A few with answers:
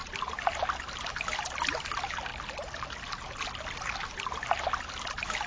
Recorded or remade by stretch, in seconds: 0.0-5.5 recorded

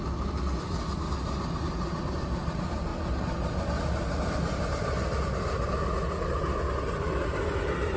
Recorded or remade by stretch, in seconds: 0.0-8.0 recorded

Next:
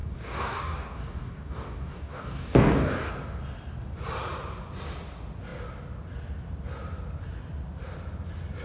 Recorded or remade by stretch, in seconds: 0.0-3.1 remade; 3.1-8.6 recorded

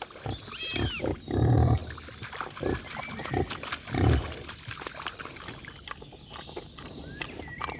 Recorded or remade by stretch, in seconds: 0.0-7.8 recorded